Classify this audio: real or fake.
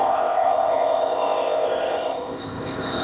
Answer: fake